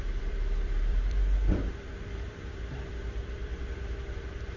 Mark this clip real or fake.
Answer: fake